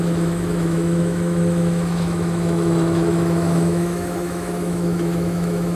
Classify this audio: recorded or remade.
remade